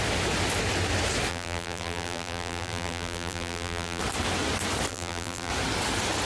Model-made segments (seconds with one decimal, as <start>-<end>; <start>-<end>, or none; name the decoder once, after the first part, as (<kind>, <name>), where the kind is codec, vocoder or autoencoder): 1.3-4.0 (vocoder, BigVGAN v2); 4.9-5.5